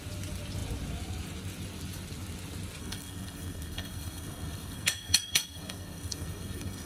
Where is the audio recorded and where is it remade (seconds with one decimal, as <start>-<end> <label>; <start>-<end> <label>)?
0.0-2.8 recorded; 2.8-6.9 remade